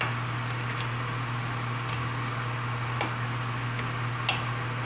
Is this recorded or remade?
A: recorded